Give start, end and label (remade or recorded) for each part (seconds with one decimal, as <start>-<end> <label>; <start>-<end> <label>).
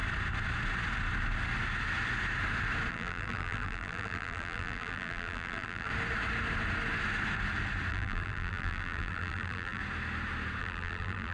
0.0-2.9 recorded; 2.9-5.9 remade; 5.9-7.9 recorded; 7.9-9.8 remade; 9.8-10.6 recorded; 10.6-11.3 remade